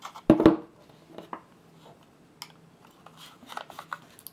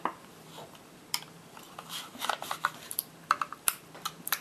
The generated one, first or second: second